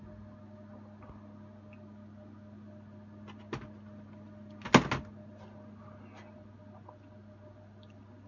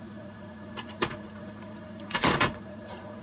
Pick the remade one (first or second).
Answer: second